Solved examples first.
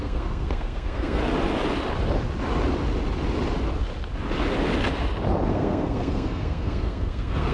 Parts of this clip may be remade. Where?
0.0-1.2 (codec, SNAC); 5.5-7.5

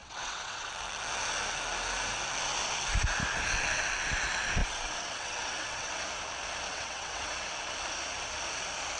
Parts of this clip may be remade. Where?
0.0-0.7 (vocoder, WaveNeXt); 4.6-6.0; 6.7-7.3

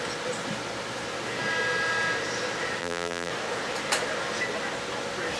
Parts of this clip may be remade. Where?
2.8-3.3 (vocoder, BigVGAN v2)